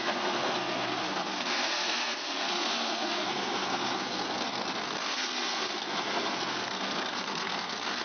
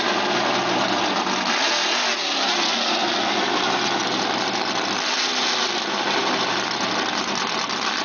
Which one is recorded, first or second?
second